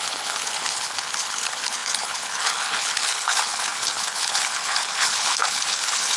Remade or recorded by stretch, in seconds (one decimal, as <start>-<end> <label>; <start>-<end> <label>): 0.0-6.2 remade